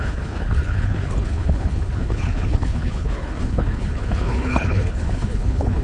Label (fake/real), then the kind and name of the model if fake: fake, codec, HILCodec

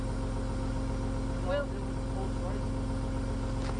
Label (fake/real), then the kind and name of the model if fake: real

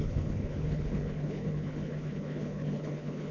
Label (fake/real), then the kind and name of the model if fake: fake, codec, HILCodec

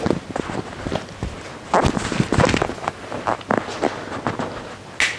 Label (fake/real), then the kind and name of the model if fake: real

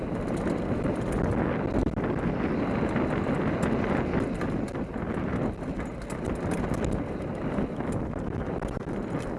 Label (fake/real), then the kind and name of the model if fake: real